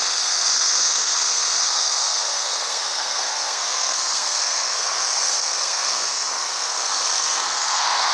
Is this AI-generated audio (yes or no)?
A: yes